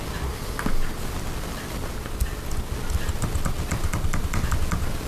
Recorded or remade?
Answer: recorded